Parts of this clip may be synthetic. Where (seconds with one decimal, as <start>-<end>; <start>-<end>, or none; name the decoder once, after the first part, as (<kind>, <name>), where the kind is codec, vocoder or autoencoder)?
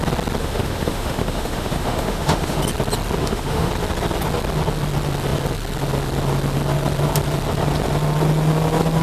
0.4-2.6 (autoencoder, DAC-VAE); 3.2-3.7